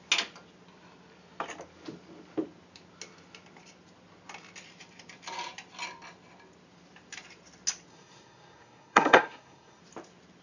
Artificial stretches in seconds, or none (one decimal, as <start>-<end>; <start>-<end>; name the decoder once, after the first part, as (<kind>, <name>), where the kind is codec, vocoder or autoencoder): 7.9-9.8 (codec, SNAC)